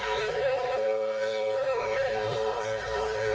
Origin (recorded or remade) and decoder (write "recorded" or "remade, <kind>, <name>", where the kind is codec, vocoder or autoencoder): remade, codec, SNAC